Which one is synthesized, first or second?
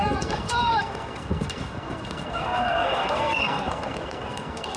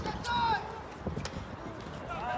first